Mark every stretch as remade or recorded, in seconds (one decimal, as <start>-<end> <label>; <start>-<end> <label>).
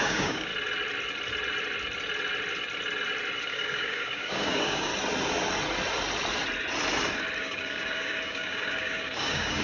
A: 0.0-0.5 remade; 0.5-3.4 recorded; 3.4-4.9 remade; 4.9-7.4 recorded; 7.4-9.6 remade